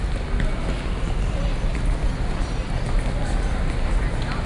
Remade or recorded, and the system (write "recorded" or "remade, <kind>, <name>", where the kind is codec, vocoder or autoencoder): recorded